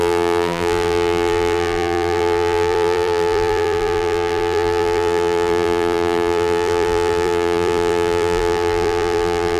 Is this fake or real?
fake